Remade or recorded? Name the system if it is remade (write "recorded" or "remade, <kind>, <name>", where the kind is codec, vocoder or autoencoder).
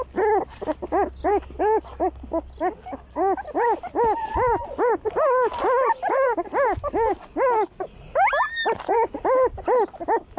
recorded